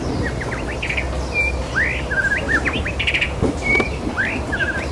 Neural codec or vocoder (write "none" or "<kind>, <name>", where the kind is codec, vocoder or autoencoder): none